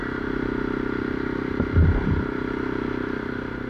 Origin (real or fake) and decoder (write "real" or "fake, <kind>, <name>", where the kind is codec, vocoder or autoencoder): real